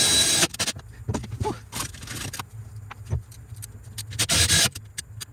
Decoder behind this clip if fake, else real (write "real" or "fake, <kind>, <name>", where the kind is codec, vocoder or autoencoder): real